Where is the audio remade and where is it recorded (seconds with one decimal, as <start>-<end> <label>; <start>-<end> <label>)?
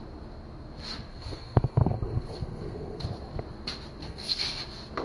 0.0-1.1 recorded; 1.1-3.0 remade; 3.0-4.0 recorded; 4.0-4.6 remade; 4.6-5.0 recorded